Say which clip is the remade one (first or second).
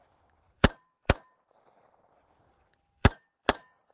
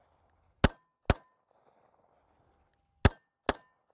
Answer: first